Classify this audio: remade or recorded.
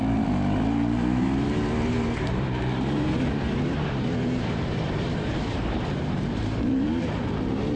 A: remade